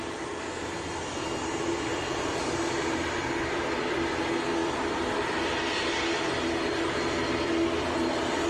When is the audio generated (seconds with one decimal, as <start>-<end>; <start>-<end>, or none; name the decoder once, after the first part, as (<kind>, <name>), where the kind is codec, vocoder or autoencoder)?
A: 1.9-4.1 (vocoder, BigVGAN v2); 4.6-5.7